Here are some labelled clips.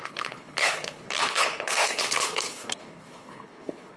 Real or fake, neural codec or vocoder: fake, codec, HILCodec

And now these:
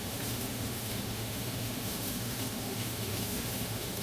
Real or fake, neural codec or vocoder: fake, autoencoder, DAC-VAE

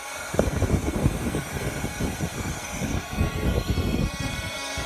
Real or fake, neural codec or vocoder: fake, codec, SNAC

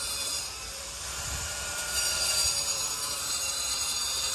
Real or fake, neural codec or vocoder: fake, vocoder, BigVGAN v2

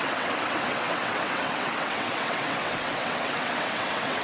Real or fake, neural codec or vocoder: fake, vocoder, WaveNeXt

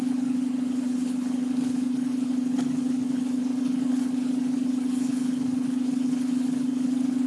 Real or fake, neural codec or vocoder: fake, codec, HILCodec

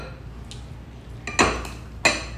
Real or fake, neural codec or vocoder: real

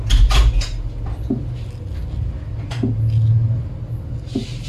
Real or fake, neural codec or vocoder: real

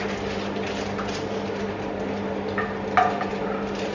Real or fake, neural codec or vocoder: real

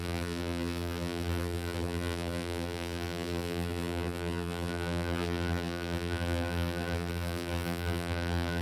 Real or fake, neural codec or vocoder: fake, vocoder, BigVGAN v2